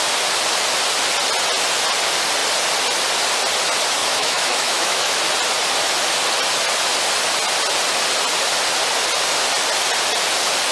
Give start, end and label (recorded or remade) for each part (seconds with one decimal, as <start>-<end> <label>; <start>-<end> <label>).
0.0-4.0 recorded; 4.0-5.2 remade; 5.2-10.7 recorded